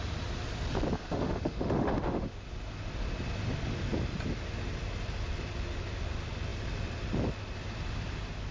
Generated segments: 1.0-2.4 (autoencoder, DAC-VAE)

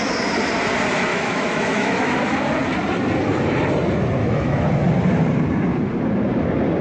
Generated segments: 1.1-2.2 (autoencoder, DAC-VAE); 4.2-4.7

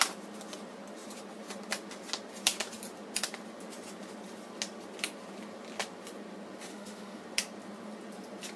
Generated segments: 6.7-7.2 (autoencoder, DAC-VAE)

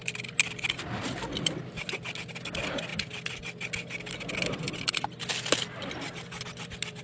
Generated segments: none

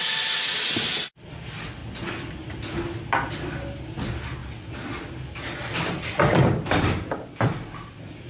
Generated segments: none

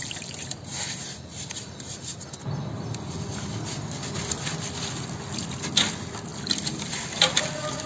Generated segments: none

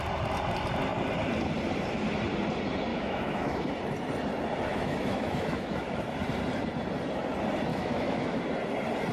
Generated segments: 2.9-3.7 (autoencoder, DAC-VAE); 4.7-6.0; 7.7-8.4

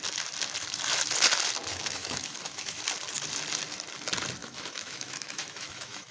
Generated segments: 1.7-2.8 (autoencoder, DAC-VAE); 4.4-6.1